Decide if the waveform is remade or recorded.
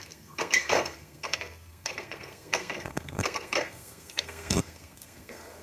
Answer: remade